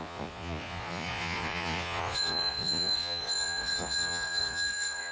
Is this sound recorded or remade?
remade